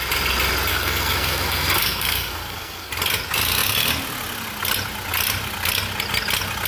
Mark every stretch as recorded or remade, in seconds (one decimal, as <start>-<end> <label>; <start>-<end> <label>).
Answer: 0.0-0.7 recorded; 0.7-2.9 remade; 2.9-6.7 recorded

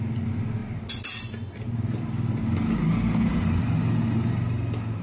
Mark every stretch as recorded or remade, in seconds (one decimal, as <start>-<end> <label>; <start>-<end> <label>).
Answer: 0.0-5.0 recorded

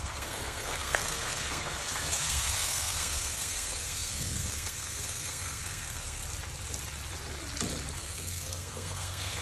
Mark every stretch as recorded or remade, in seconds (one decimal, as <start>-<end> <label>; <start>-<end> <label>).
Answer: 0.0-6.2 remade; 6.2-7.9 recorded; 7.9-9.4 remade